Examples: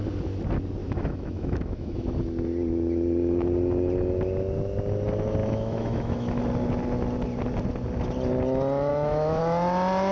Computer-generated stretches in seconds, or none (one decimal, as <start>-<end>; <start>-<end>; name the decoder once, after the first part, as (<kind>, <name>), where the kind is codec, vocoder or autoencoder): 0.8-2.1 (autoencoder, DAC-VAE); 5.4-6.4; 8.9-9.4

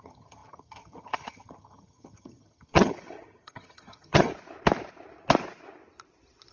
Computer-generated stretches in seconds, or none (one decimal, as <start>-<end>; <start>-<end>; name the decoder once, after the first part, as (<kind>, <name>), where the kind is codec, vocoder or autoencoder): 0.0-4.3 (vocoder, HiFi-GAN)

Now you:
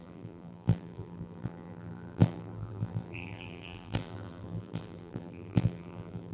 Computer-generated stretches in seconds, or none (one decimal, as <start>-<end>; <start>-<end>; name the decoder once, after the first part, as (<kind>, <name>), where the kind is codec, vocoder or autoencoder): 0.0-6.3 (vocoder, BigVGAN v2)

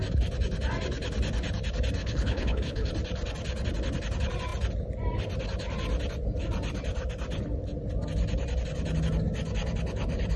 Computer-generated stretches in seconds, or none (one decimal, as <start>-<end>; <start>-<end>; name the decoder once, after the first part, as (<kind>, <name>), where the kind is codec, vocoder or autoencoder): 2.0-2.9 (codec, HILCodec)

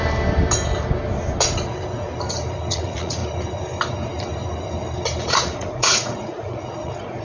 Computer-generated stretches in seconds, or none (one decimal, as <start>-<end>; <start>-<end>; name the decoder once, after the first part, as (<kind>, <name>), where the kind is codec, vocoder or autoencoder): 2.7-3.2 (vocoder, Vocos); 5.2-7.2

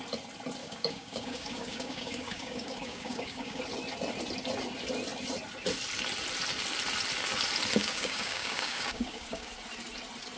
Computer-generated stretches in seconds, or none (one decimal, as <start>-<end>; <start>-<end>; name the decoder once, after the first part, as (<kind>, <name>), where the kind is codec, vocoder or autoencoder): 0.6-3.6 (codec, DAC); 7.8-9.5